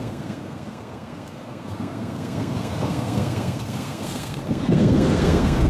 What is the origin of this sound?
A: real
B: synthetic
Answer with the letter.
B